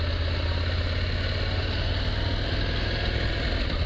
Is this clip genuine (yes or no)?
yes